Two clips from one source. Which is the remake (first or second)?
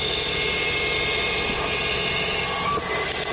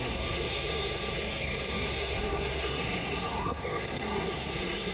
second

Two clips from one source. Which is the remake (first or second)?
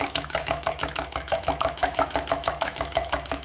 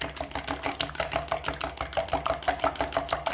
first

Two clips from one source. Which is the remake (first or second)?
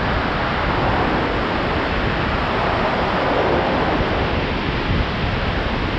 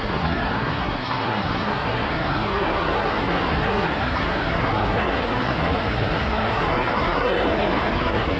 second